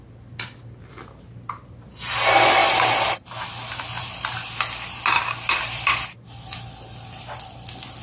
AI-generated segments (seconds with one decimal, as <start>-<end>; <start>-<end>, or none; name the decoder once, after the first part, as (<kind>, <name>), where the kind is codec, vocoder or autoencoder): none